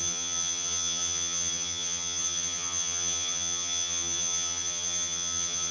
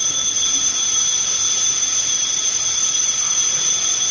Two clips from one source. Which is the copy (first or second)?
first